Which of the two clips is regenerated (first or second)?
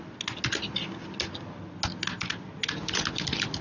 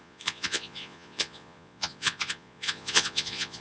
second